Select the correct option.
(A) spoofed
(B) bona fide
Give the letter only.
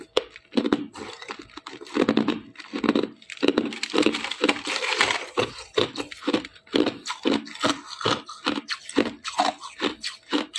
A